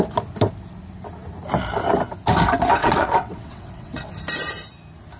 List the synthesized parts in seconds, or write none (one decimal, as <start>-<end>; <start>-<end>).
2.8-4.1